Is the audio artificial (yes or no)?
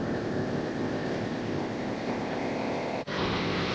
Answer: yes